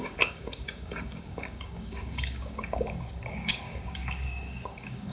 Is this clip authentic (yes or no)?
no